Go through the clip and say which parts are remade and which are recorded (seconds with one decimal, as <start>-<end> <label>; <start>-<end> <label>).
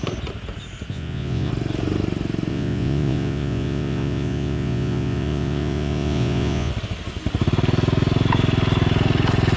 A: 0.0-0.9 recorded; 0.9-1.5 remade; 1.5-2.5 recorded; 2.5-6.7 remade; 6.7-9.6 recorded